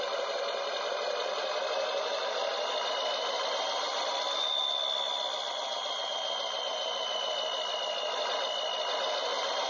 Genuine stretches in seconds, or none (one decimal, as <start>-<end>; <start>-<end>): 0.0-9.7